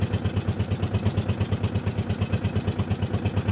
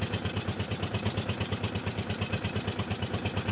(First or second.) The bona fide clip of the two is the first